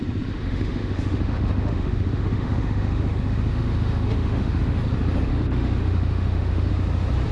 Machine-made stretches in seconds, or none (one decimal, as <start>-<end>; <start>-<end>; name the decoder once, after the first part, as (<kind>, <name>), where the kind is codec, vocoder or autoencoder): 0.4-4.8 (autoencoder, DAC-VAE); 5.3-6.7